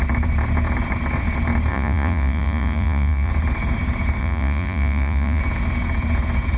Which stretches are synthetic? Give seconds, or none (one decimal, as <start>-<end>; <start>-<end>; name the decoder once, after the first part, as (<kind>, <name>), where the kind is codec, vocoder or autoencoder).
1.7-3.3 (vocoder, Vocos); 4.2-5.4